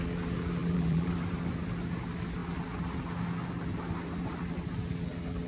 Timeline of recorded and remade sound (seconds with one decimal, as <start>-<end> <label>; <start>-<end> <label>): 0.0-0.6 recorded; 0.6-1.1 remade; 1.1-5.5 recorded